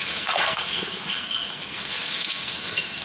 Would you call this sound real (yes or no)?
no